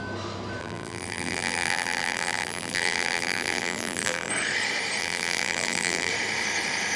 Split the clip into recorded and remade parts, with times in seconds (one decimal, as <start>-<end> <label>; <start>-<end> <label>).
0.0-0.6 recorded; 0.6-4.3 remade; 4.3-5.0 recorded; 5.0-6.1 remade; 6.1-7.0 recorded